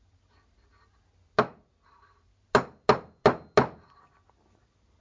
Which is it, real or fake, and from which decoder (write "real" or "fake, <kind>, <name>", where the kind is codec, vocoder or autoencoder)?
real